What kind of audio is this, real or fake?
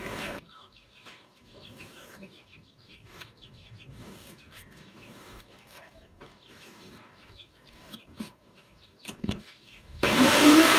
fake